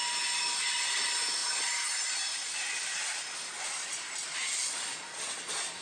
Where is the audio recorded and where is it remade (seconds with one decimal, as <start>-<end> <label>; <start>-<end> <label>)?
0.0-5.8 recorded